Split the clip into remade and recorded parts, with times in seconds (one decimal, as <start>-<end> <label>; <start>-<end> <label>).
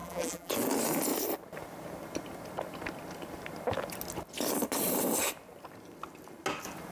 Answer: 0.0-0.5 remade; 0.5-6.9 recorded